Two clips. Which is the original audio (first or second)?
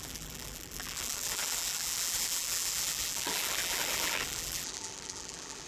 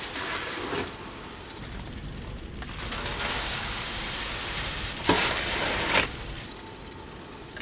second